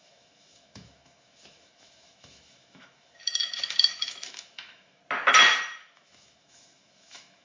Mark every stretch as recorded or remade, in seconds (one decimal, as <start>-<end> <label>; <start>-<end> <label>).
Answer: 0.0-5.0 remade; 5.0-5.8 recorded; 5.8-7.4 remade